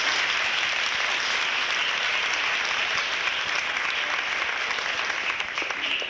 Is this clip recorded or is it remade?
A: recorded